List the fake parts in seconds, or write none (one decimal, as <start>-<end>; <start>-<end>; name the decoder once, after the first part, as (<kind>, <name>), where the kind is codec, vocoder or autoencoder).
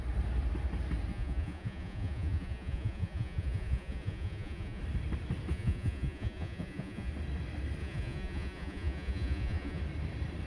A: 1.1-4.8 (vocoder, Vocos); 5.5-7.1; 7.8-9.8